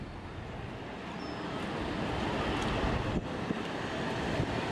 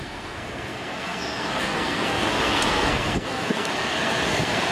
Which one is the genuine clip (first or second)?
first